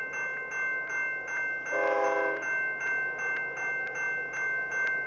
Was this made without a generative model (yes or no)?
yes